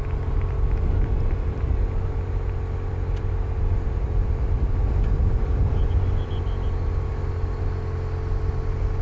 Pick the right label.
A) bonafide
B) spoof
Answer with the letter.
A